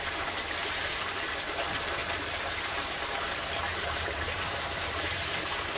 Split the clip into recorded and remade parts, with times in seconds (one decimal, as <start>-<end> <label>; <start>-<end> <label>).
0.0-0.6 recorded; 0.6-1.3 remade; 1.3-2.0 recorded; 2.0-2.5 remade; 2.5-3.7 recorded; 3.7-4.8 remade; 4.8-5.8 recorded